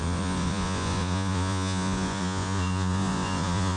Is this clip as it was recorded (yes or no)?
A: no